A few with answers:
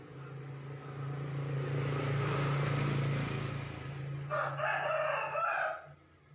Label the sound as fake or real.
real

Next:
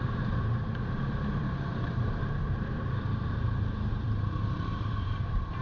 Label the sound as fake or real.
fake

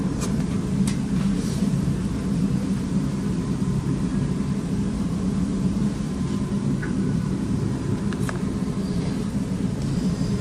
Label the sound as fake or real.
fake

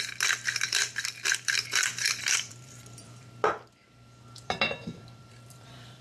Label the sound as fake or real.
fake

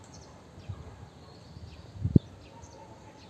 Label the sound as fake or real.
real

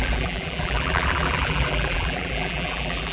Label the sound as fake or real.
fake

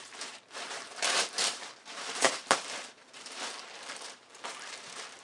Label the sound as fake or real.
fake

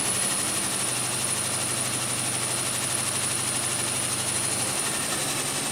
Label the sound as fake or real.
real